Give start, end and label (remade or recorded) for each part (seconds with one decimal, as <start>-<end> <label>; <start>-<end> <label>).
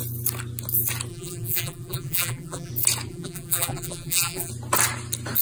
0.0-1.1 recorded; 1.1-2.7 remade; 2.7-3.1 recorded; 3.1-4.5 remade; 4.5-5.4 recorded